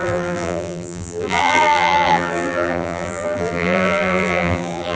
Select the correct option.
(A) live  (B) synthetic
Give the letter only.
B